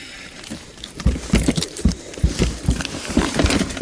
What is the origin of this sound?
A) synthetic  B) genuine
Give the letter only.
A